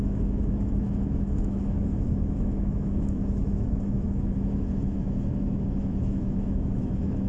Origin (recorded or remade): remade